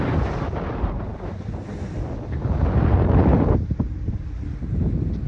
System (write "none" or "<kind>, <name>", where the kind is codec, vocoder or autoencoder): none